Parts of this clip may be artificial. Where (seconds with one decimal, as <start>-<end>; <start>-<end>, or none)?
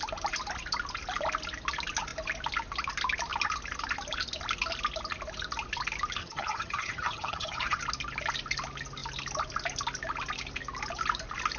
6.2-7.8